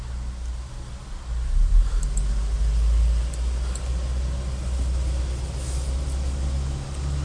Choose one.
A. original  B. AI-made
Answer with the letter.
A